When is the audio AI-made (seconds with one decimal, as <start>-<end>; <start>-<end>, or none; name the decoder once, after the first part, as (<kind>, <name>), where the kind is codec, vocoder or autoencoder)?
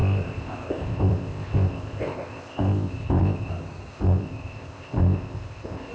0.0-3.5 (codec, ZipCodec); 3.9-5.9